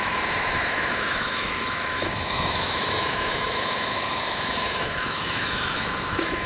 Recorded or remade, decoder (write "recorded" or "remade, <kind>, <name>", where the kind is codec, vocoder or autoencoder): remade, autoencoder, DAC-VAE